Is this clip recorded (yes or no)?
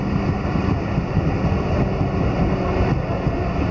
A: yes